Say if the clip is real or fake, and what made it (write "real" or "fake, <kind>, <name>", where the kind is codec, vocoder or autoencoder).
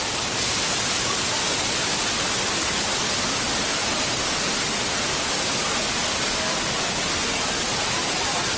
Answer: real